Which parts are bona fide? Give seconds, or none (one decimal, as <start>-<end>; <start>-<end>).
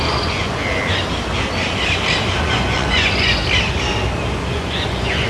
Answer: 0.6-2.4; 3.4-4.5